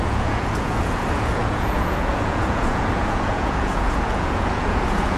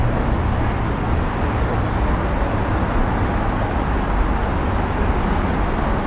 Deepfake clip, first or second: first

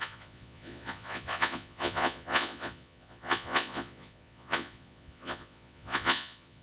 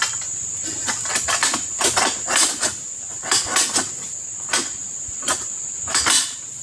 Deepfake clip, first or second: first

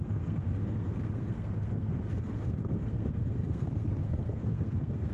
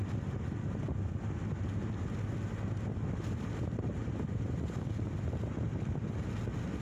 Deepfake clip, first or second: first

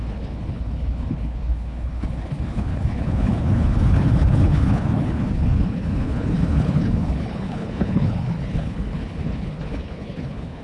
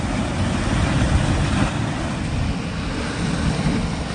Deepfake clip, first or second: first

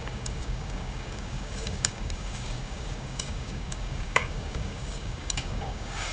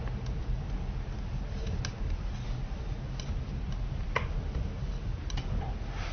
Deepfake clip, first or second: first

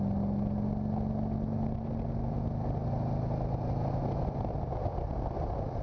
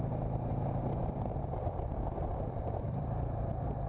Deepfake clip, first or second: second